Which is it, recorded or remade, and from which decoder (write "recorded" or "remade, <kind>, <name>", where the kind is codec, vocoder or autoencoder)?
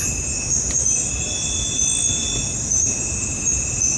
recorded